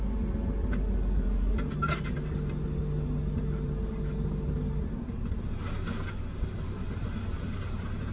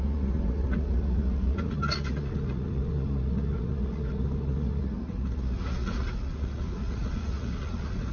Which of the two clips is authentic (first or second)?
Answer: first